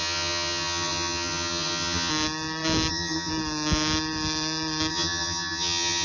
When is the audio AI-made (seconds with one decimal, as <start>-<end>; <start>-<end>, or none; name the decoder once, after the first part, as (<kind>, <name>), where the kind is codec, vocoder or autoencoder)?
0.0-2.1 (vocoder, HiFi-GAN); 2.9-3.3; 4.9-6.0